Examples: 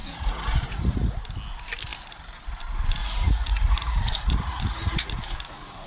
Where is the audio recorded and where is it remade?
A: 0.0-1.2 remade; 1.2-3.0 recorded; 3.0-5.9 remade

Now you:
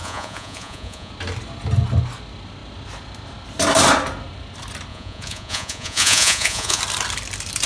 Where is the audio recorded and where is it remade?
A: 0.0-1.1 remade; 1.1-4.9 recorded; 4.9-6.8 remade; 6.8-7.7 recorded

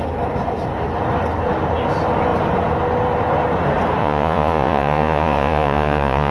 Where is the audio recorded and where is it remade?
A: 0.0-4.0 recorded; 4.0-6.3 remade

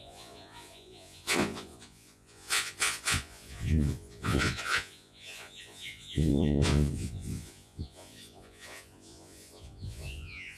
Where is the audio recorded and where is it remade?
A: 0.0-10.6 remade

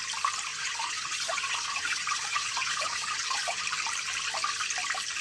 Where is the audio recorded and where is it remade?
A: 0.0-0.5 recorded; 0.5-3.6 remade; 3.6-5.2 recorded